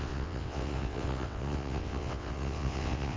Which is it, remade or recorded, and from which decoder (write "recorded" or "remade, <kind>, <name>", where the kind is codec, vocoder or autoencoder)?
remade, vocoder, WaveNeXt